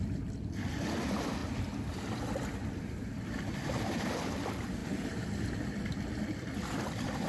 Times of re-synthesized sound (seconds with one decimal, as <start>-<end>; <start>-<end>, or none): 0.0-7.3